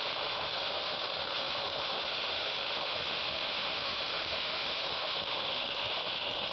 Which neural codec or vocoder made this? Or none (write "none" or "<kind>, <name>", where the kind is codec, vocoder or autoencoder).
autoencoder, DAC-VAE